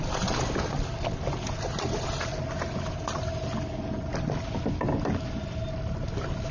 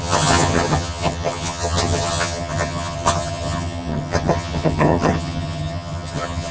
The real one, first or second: first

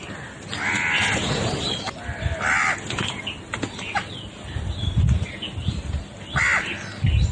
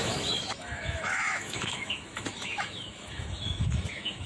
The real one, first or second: first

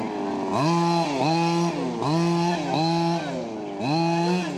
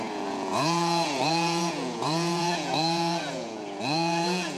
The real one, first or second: first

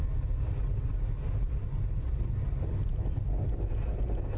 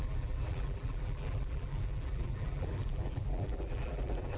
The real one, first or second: first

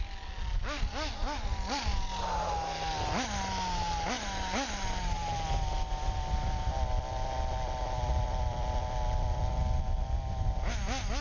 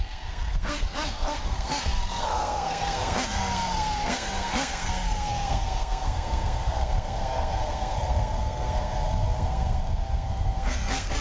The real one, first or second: first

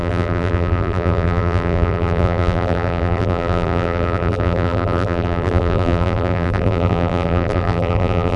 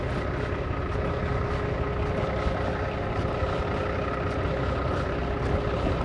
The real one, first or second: second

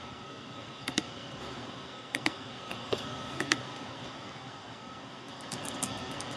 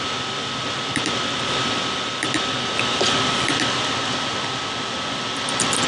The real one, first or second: second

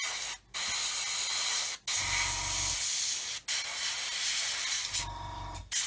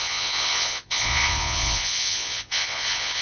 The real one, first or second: first